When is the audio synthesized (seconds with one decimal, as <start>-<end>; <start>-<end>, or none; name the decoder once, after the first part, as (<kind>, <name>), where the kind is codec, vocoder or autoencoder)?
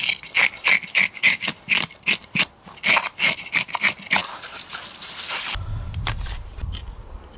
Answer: 0.9-1.5 (codec, DAC)